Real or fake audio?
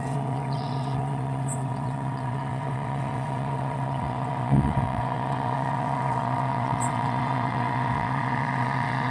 fake